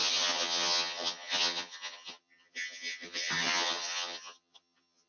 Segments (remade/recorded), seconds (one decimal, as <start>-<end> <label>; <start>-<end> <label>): 0.0-5.1 remade